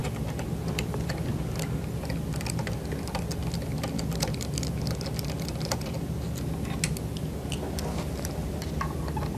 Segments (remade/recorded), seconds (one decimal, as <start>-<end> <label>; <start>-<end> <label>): 0.0-9.4 recorded